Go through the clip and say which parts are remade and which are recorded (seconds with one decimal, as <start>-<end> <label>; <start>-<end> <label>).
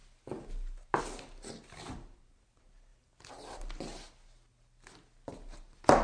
0.0-6.0 recorded